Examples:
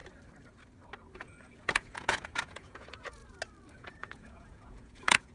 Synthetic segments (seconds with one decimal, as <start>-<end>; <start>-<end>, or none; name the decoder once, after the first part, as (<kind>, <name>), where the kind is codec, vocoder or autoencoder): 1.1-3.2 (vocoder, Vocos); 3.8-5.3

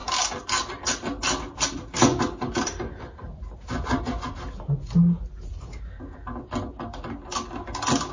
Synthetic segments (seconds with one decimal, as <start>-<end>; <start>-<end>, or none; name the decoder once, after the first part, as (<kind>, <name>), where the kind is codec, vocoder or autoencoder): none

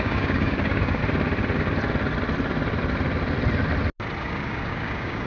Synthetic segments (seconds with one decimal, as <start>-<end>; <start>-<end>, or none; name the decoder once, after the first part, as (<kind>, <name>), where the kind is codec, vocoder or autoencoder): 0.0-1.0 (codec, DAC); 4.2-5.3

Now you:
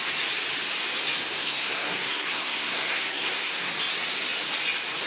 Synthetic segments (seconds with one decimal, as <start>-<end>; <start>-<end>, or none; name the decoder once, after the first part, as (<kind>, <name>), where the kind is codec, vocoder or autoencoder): 1.4-3.7 (codec, SNAC)

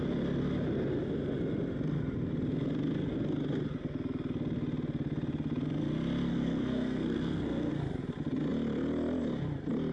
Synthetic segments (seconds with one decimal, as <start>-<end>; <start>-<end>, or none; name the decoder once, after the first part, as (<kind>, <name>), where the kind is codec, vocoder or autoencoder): 6.3-7.7 (codec, SNAC)

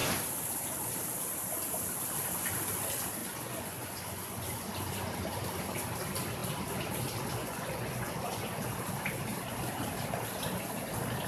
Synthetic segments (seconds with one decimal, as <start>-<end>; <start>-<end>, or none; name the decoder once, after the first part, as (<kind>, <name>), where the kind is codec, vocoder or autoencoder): 3.2-4.7 (vocoder, Vocos); 7.4-8.6